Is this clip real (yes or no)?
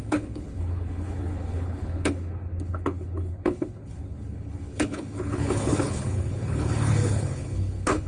no